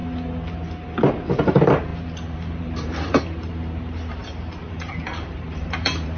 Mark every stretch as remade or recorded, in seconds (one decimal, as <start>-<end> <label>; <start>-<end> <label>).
0.0-1.3 recorded; 1.3-6.2 remade